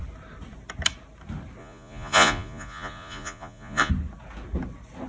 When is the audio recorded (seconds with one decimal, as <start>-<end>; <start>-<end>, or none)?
0.0-1.6; 3.9-5.1

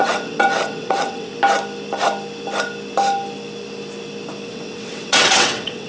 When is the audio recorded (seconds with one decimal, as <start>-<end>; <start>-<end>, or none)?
1.3-4.5

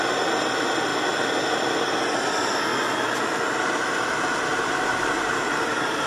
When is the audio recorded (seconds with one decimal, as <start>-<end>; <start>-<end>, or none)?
0.0-4.5

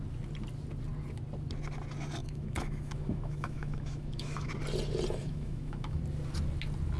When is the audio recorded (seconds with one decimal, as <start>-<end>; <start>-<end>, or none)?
0.0-2.2; 4.5-5.2; 6.0-7.0

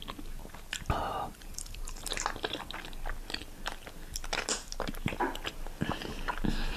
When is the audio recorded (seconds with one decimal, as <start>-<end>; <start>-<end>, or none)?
0.0-1.0; 2.1-6.8

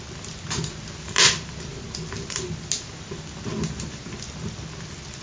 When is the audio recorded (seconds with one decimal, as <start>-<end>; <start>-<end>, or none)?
0.0-5.2

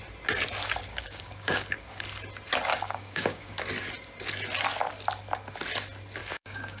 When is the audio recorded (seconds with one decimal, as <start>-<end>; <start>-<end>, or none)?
0.0-0.9; 2.0-2.7; 3.6-6.2